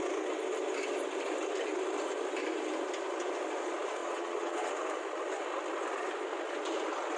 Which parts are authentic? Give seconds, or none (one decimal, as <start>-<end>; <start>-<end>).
0.0-4.0; 4.7-7.2